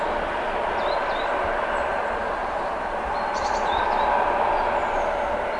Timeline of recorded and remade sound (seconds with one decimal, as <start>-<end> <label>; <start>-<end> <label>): 0.0-2.4 recorded; 2.4-3.7 remade; 3.7-5.6 recorded